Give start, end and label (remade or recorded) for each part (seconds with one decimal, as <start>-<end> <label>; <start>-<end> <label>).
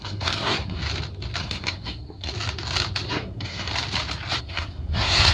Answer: 0.0-0.8 remade; 0.8-1.4 recorded; 1.4-2.3 remade; 2.3-3.1 recorded; 3.1-3.7 remade; 3.7-4.4 recorded; 4.4-5.3 remade